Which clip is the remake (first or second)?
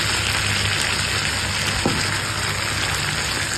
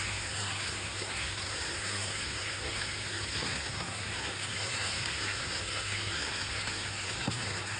second